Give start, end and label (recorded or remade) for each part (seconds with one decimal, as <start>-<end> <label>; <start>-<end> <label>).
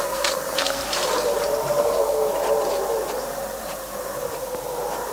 0.0-0.8 remade; 0.8-1.8 recorded; 1.8-2.3 remade; 2.3-5.1 recorded